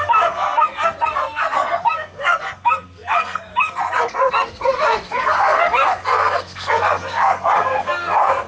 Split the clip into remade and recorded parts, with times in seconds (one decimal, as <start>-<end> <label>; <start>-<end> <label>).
0.0-8.5 remade